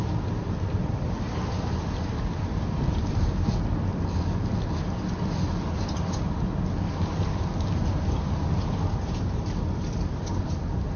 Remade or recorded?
recorded